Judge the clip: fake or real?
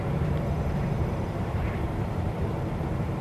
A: fake